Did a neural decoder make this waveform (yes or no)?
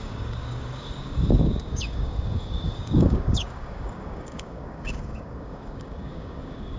yes